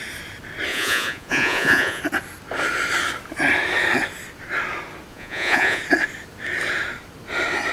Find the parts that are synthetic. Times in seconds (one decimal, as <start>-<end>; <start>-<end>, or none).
0.7-2.0; 5.1-5.8